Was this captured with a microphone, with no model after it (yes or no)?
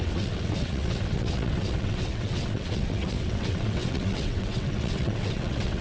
no